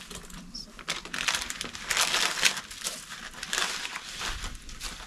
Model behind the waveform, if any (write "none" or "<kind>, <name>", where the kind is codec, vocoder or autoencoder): none